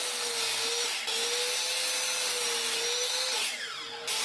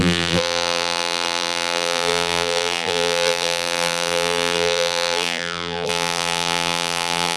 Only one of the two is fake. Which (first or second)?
second